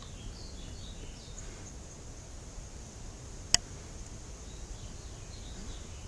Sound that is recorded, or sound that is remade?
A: recorded